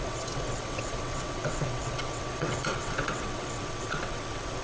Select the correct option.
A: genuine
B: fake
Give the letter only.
B